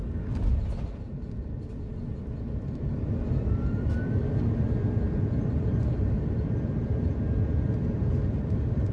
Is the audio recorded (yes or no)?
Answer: yes